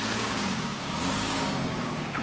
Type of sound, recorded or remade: remade